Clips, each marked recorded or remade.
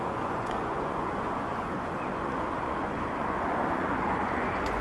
remade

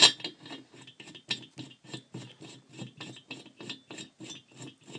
recorded